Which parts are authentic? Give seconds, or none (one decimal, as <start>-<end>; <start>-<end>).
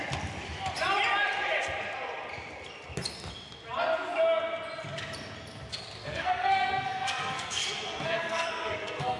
0.0-6.0